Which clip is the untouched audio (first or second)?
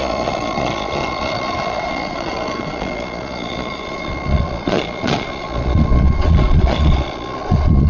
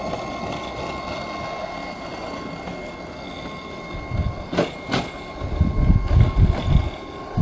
second